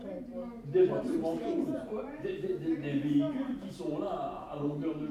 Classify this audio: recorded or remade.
remade